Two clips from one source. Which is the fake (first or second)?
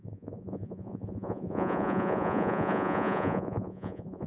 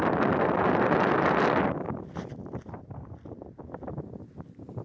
first